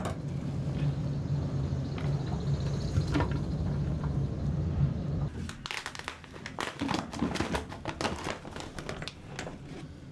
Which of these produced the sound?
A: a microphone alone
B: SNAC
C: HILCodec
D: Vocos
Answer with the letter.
A